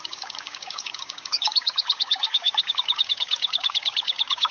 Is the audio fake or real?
fake